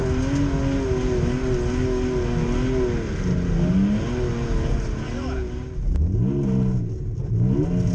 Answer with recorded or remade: recorded